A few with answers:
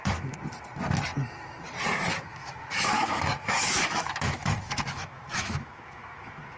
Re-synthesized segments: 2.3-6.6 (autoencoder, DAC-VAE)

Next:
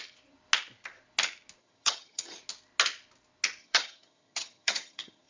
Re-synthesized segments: 1.6-2.4 (vocoder, HiFi-GAN); 3.6-5.3

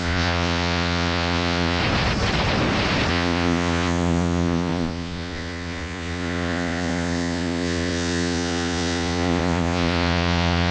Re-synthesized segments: 0.0-1.8 (vocoder, Vocos); 3.1-10.7

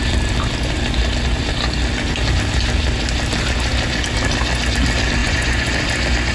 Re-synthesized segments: 5.2-5.7 (vocoder, Vocos)

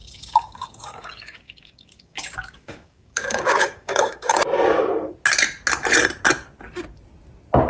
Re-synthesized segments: 0.0-4.4 (codec, DAC)

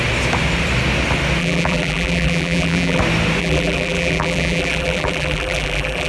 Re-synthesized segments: 1.4-3.0 (vocoder, BigVGAN v2); 3.4-6.1

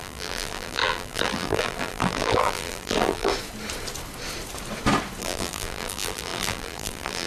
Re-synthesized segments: 0.0-3.3 (vocoder, BigVGAN v2); 5.2-7.3